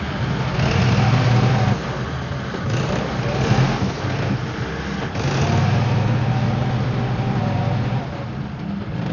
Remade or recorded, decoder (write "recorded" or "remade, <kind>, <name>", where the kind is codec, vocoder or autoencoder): recorded